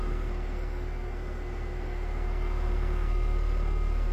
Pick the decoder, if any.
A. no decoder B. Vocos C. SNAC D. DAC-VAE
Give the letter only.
C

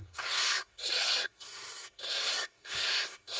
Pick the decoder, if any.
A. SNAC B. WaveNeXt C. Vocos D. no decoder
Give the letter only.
A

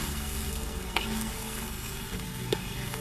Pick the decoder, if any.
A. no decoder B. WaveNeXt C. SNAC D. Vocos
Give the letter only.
C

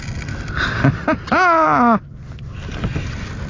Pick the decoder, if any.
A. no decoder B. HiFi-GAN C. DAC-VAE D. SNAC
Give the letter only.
A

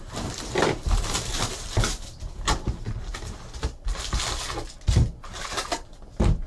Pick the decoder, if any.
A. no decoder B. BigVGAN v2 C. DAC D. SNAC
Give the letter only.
A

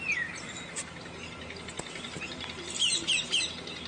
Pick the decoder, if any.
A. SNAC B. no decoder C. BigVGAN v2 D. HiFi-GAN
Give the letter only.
B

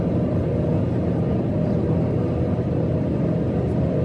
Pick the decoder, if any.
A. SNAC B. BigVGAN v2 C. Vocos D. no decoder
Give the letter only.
D